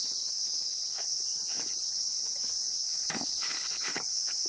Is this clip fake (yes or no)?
yes